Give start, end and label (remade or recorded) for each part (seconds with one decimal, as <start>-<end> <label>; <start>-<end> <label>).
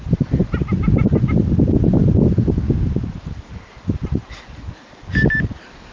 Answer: 0.0-5.9 recorded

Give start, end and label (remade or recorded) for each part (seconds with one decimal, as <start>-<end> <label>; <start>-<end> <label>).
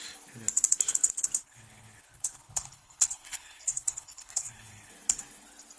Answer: 0.0-1.4 recorded; 1.4-4.9 remade; 4.9-5.8 recorded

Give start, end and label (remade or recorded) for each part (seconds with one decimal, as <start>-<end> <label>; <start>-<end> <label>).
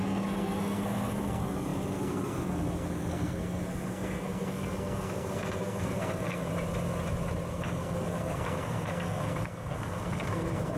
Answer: 0.0-6.5 remade; 6.5-7.5 recorded; 7.5-10.8 remade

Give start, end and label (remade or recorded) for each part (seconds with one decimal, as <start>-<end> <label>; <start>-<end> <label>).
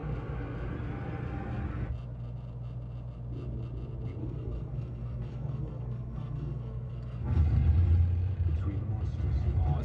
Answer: 0.0-4.2 recorded; 4.2-7.4 remade; 7.4-9.8 recorded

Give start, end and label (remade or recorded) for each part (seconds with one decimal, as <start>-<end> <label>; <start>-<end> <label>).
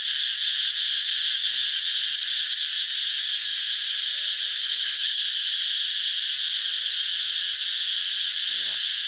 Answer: 0.0-4.6 recorded; 4.6-5.2 remade; 5.2-9.1 recorded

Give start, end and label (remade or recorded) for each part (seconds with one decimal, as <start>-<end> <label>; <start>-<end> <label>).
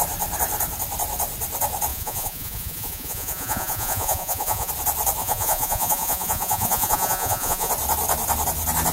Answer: 0.0-1.9 recorded; 1.9-4.7 remade; 4.7-5.2 recorded; 5.2-7.7 remade; 7.7-8.9 recorded